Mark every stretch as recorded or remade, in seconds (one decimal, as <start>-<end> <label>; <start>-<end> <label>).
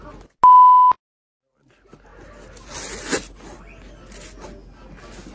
0.0-5.3 recorded